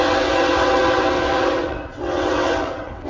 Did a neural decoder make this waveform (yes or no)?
yes